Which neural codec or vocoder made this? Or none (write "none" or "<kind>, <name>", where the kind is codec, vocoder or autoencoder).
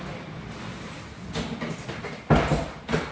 none